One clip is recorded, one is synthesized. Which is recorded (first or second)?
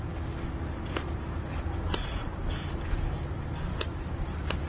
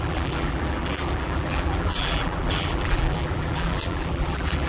first